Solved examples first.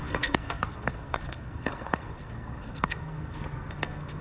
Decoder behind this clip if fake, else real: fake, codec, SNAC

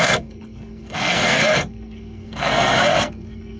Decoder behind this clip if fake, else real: fake, codec, SNAC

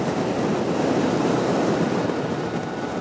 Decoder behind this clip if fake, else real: real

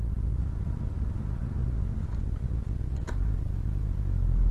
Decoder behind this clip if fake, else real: real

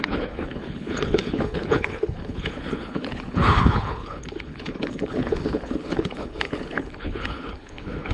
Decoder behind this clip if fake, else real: fake, codec, HILCodec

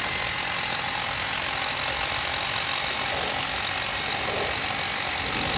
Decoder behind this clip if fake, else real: real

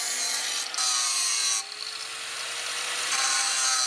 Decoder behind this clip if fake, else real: real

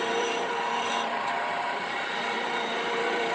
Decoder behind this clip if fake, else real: fake, vocoder, BigVGAN v2